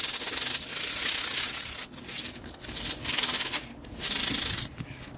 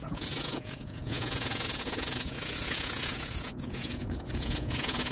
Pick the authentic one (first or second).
first